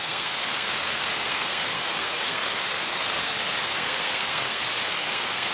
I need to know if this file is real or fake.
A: fake